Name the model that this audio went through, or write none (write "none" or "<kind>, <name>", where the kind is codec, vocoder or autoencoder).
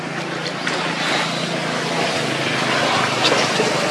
none